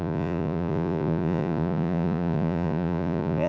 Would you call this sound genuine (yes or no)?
no